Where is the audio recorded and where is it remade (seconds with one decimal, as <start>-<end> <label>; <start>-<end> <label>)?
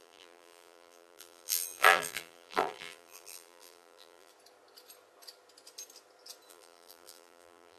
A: 0.0-4.3 remade; 4.3-6.5 recorded; 6.5-7.8 remade